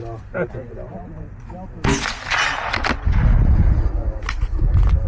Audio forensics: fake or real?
real